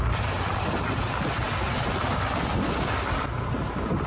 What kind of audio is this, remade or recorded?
recorded